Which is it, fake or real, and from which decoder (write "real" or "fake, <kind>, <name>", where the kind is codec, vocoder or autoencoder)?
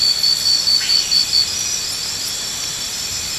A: real